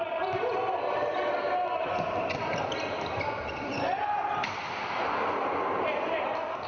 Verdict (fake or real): real